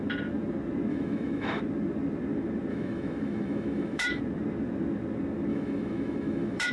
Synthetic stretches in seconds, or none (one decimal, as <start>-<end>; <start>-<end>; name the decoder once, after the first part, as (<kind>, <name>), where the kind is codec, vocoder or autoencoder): 0.9-1.6 (autoencoder, DAC-VAE); 2.7-4.2; 5.5-6.7